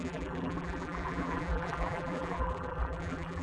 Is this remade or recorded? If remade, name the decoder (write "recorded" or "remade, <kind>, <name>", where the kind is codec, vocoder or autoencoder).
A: remade, vocoder, BigVGAN v2